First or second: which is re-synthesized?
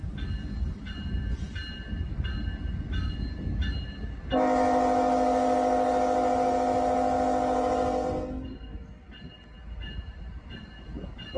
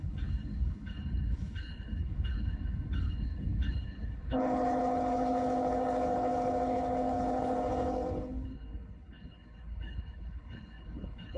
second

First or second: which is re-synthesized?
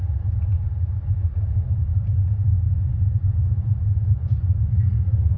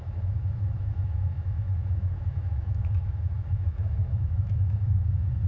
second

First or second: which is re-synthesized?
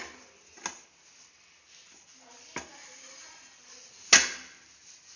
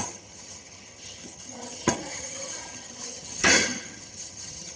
second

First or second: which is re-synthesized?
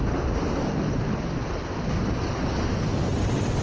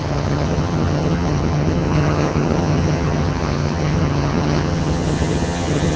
second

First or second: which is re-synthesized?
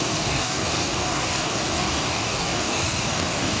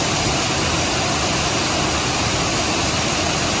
first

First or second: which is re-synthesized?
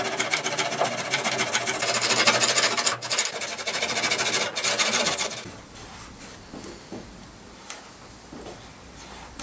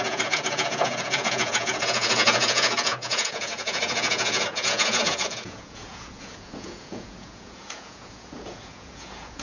second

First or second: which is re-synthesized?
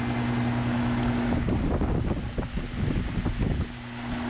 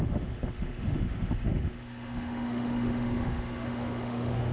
second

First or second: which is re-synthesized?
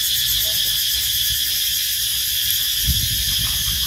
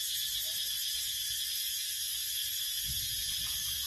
second